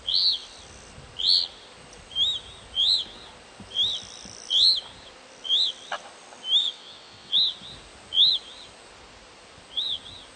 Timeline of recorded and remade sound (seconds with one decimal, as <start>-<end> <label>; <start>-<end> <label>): 0.0-6.6 recorded; 6.6-7.3 remade; 7.3-10.4 recorded